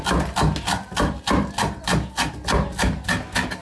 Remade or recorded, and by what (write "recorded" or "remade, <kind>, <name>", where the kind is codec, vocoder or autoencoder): recorded